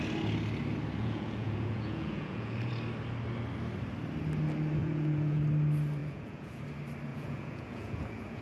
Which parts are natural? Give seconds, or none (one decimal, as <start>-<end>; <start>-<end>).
0.0-1.0; 2.7-4.8; 5.4-6.0; 6.6-7.1